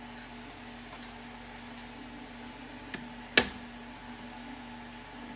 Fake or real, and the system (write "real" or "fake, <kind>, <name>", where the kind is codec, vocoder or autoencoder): real